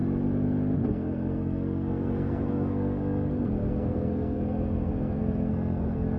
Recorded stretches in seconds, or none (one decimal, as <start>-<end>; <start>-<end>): 0.0-0.9

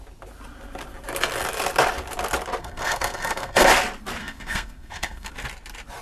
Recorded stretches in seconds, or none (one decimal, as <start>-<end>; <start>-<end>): 0.0-2.6; 3.7-4.2; 5.3-6.0

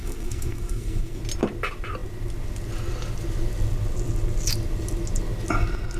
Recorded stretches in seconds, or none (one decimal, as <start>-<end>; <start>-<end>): 1.2-6.0

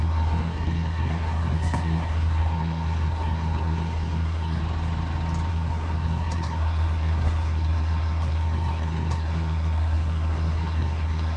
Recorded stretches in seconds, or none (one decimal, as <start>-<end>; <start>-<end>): 4.6-5.5

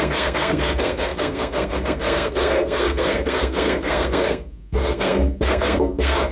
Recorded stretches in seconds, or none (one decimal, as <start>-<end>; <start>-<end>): none

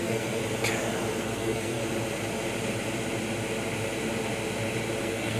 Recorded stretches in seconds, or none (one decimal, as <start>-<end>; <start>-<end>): 0.4-1.2; 1.8-5.0